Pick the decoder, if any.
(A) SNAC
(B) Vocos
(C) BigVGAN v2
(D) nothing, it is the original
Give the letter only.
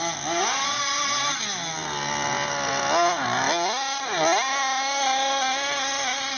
D